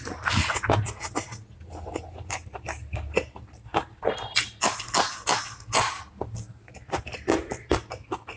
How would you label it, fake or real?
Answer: real